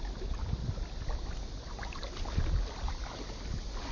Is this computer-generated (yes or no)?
no